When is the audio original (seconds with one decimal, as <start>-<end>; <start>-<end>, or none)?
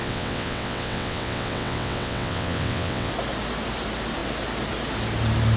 3.1-5.6